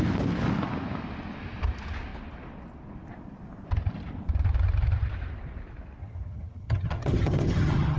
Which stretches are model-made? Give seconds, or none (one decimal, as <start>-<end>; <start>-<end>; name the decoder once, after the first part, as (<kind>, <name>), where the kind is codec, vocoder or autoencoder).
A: 6.0-8.0 (vocoder, HiFi-GAN)